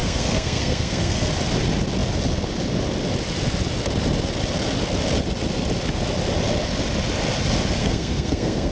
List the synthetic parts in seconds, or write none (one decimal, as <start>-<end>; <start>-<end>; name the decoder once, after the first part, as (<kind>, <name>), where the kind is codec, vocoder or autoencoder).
0.0-1.3 (codec, SNAC); 7.8-8.7